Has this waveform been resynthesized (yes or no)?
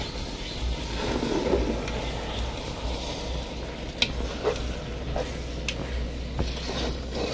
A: no